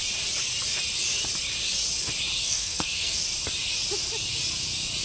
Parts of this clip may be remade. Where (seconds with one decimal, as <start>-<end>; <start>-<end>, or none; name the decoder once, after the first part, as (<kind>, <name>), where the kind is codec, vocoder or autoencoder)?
2.4-3.2 (codec, SNAC)